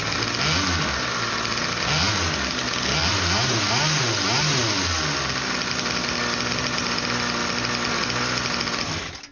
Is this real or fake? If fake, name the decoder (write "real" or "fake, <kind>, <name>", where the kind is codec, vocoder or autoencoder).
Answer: real